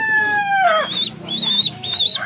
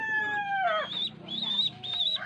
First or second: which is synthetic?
first